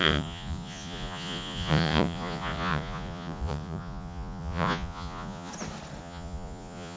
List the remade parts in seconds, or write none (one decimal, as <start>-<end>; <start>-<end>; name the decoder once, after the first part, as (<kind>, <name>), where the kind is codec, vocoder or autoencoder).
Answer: 0.0-5.5 (vocoder, Vocos); 6.0-7.0